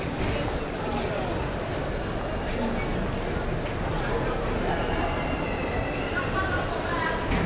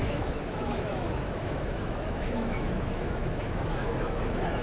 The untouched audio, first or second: first